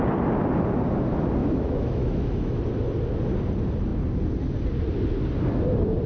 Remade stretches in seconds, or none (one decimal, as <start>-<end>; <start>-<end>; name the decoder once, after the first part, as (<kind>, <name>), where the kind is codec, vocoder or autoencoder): 1.4-2.6 (autoencoder, DAC-VAE)